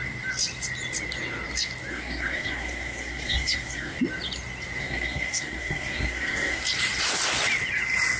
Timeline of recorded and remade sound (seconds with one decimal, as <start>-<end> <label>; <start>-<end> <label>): 0.0-1.9 recorded; 1.9-4.0 remade; 4.0-4.8 recorded; 4.8-6.6 remade; 6.6-8.2 recorded